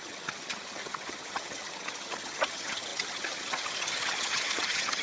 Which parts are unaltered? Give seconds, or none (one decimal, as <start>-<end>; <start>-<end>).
none